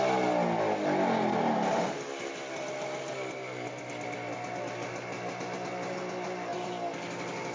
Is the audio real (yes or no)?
yes